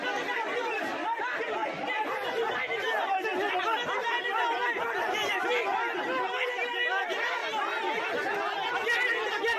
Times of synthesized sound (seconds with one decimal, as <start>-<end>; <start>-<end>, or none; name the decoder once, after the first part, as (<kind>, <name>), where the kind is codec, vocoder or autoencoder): none